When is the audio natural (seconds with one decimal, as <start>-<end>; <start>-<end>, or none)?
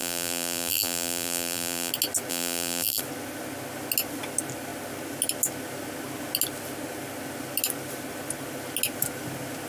1.9-2.3; 3.0-9.7